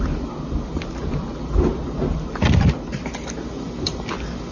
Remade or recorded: recorded